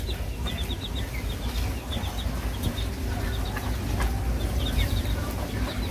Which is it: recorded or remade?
recorded